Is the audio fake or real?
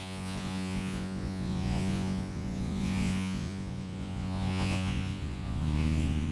fake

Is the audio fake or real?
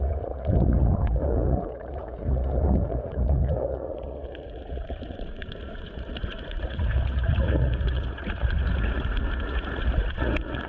fake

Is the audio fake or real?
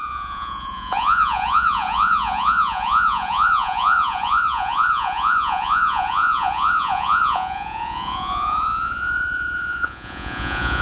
fake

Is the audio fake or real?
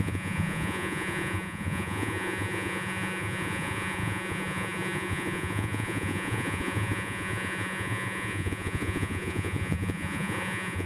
fake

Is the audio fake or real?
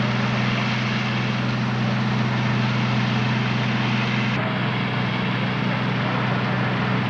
real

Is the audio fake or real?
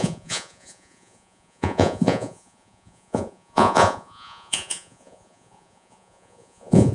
fake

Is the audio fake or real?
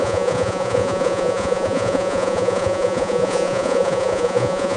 fake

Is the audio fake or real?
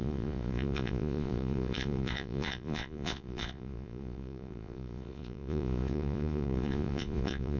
fake